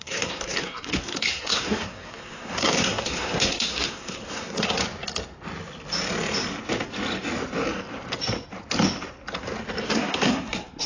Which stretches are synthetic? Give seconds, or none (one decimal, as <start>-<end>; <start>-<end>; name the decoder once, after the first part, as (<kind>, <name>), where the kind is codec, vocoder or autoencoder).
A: 0.0-4.8 (codec, SNAC); 9.9-10.9